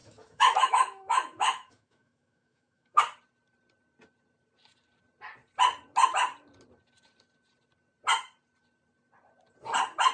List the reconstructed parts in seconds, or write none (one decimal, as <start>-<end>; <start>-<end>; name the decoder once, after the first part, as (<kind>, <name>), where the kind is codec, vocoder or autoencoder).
0.0-3.0 (autoencoder, DAC-VAE)